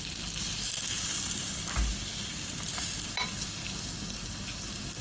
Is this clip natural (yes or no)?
yes